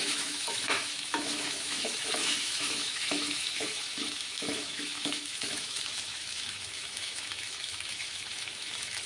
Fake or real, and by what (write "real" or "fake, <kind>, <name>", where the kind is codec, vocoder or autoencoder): fake, autoencoder, DAC-VAE